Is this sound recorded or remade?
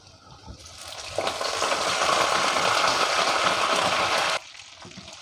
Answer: recorded